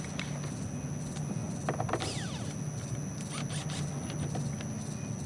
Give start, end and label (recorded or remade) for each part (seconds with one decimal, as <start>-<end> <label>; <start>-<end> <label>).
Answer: 0.0-5.3 recorded